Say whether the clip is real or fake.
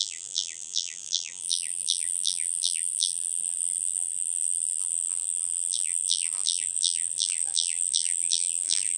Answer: fake